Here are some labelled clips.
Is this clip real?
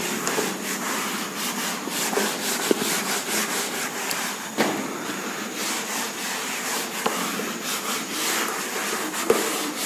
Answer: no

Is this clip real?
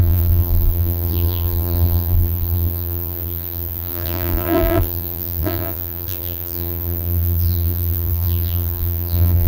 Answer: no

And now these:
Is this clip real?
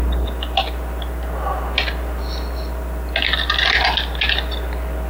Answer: yes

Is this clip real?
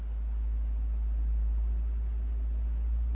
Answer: yes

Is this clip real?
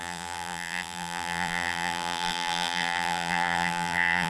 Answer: no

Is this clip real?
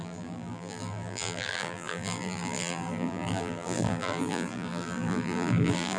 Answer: no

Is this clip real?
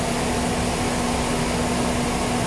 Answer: yes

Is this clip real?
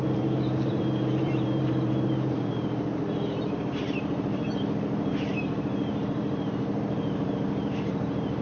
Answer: no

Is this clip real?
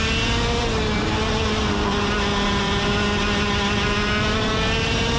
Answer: yes